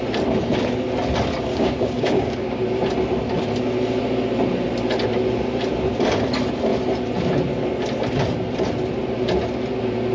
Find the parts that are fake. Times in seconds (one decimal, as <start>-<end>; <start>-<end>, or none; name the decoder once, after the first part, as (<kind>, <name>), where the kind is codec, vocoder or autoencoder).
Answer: 1.5-2.6 (codec, DAC)